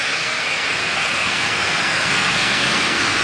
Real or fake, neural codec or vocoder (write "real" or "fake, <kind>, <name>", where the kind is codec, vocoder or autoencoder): fake, codec, SNAC